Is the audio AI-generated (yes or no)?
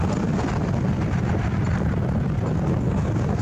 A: no